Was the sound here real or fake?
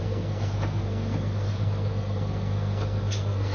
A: fake